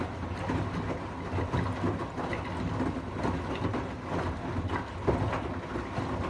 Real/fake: real